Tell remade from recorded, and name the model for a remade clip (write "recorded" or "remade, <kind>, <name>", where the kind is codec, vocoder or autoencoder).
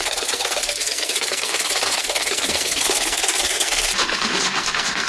remade, codec, SNAC